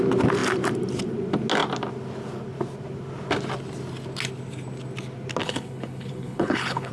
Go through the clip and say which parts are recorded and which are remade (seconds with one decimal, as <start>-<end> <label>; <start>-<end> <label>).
0.0-5.4 recorded; 5.4-6.9 remade